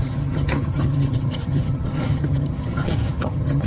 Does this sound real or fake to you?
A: fake